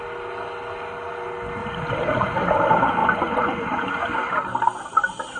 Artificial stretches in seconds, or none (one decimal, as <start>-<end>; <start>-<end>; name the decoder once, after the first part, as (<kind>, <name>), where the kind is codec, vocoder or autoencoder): 1.6-2.4 (vocoder, BigVGAN v2); 3.0-4.0